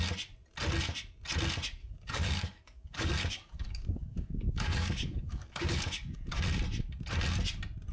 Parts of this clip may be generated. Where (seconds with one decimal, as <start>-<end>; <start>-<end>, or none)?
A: 1.8-6.4